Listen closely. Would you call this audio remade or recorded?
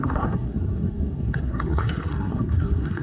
remade